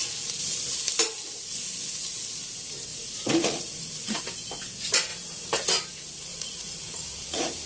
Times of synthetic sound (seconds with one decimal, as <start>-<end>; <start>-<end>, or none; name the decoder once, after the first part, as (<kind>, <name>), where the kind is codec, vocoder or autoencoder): 2.9-4.2 (vocoder, Vocos); 5.1-5.7; 6.3-7.7